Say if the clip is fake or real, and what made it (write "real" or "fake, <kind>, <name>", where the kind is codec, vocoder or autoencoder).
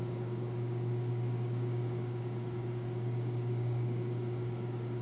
fake, codec, DAC